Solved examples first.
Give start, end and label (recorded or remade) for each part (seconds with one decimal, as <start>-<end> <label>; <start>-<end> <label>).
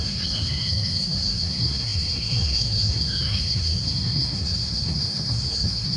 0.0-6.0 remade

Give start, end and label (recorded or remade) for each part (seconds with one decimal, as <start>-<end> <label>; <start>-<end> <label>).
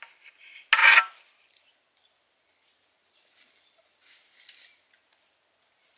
0.0-6.0 recorded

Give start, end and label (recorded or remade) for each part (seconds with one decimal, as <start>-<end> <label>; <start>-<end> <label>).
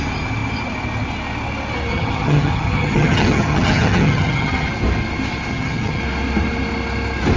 0.0-1.9 recorded; 1.9-4.7 remade; 4.7-5.5 recorded; 5.5-6.0 remade; 6.0-7.4 recorded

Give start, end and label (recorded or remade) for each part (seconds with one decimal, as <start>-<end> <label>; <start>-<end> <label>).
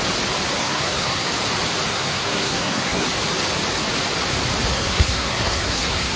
0.0-0.6 recorded; 0.6-1.3 remade; 1.3-1.9 recorded; 1.9-3.1 remade; 3.1-4.7 recorded; 4.7-6.2 remade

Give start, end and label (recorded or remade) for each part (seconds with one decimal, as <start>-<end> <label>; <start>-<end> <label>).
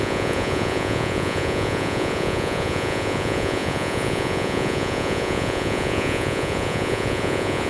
0.0-7.7 remade